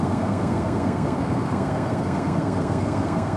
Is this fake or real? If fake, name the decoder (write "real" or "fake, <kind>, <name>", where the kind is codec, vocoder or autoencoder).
fake, codec, SNAC